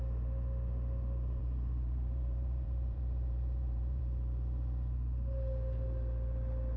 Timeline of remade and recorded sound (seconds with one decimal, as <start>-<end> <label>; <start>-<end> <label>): 0.0-1.4 recorded; 1.4-4.0 remade; 4.0-6.8 recorded